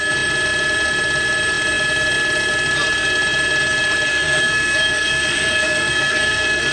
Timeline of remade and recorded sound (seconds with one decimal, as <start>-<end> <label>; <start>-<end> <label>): 0.0-4.1 recorded; 4.1-6.7 remade